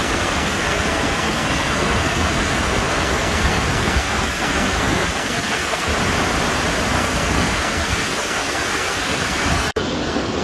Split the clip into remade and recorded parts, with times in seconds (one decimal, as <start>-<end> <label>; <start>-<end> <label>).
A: 0.0-5.9 remade; 5.9-6.9 recorded; 6.9-10.4 remade